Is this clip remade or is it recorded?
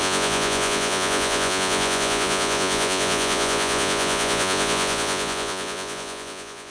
remade